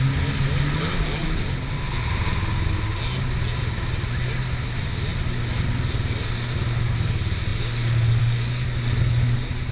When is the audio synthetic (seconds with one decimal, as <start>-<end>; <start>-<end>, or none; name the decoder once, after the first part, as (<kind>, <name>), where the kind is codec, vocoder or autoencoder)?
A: none